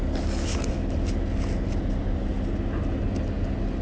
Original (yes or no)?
yes